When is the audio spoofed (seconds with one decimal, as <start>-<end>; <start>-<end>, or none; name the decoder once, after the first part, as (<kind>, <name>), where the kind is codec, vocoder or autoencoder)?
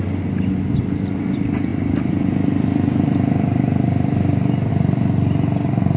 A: none